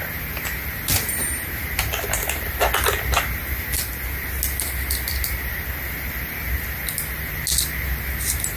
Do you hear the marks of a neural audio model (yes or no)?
no